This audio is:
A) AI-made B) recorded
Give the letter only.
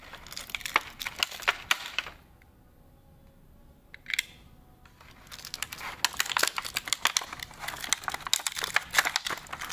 B